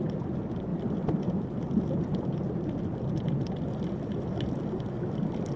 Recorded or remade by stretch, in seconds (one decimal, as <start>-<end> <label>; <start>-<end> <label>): 0.0-5.6 recorded